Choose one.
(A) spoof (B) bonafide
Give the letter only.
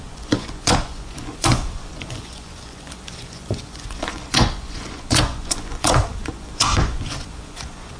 A